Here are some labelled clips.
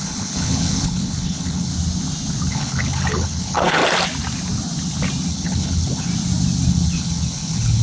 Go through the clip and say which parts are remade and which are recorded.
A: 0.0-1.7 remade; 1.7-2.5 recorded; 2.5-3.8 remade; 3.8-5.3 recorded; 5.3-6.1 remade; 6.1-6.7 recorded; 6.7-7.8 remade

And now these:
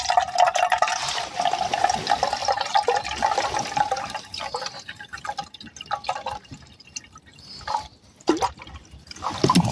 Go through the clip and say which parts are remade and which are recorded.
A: 0.0-9.7 recorded

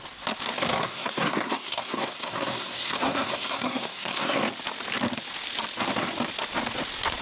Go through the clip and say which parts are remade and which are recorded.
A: 0.0-0.7 recorded; 0.7-4.4 remade; 4.4-7.2 recorded

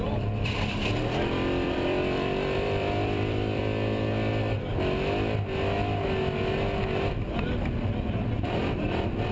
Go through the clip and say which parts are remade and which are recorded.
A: 0.0-3.6 remade; 3.6-7.7 recorded; 7.7-9.3 remade

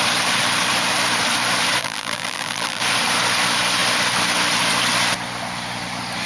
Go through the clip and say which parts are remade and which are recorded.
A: 0.0-1.8 recorded; 1.8-2.8 remade; 2.8-6.3 recorded

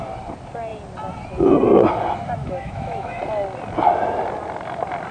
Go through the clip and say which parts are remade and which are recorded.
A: 0.0-2.4 recorded; 2.4-3.2 remade; 3.2-5.1 recorded

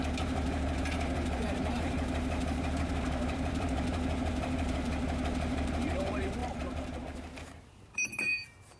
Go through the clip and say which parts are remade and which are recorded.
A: 0.0-8.8 remade

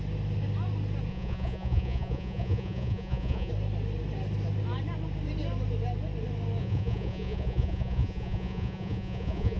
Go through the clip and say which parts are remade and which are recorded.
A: 0.0-1.1 recorded; 1.1-3.5 remade; 3.5-6.6 recorded; 6.6-9.6 remade